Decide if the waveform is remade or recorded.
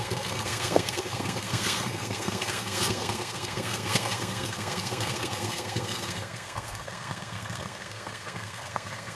remade